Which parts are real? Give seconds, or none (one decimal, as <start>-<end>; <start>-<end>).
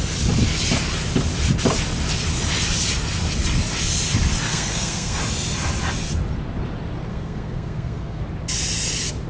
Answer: 0.0-4.5; 5.2-7.1; 8.2-9.3